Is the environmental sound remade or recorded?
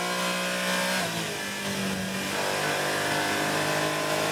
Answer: recorded